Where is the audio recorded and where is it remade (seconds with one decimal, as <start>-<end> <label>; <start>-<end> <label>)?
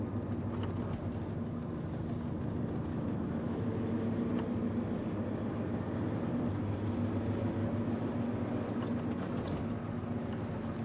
0.0-2.9 recorded; 2.9-4.1 remade; 4.1-10.8 recorded